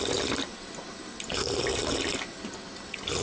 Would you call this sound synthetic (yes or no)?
no